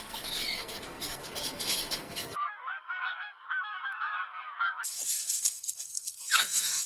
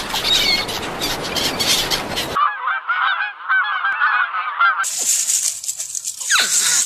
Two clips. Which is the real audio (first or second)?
second